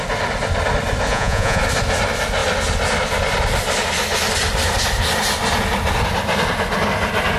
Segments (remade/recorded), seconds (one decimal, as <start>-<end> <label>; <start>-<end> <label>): 0.0-1.1 recorded; 1.1-1.6 remade; 1.6-7.4 recorded